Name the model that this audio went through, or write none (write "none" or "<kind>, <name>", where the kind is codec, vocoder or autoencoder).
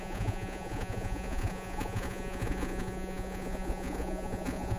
vocoder, Vocos